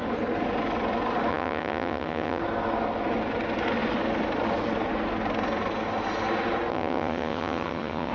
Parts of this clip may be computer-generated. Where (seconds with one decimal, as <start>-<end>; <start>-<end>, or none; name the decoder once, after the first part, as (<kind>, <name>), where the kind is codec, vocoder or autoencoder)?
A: 1.3-2.4 (vocoder, HiFi-GAN); 6.7-8.1